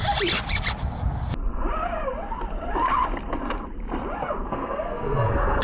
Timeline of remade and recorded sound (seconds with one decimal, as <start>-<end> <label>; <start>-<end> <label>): 0.0-4.5 recorded; 4.5-5.6 remade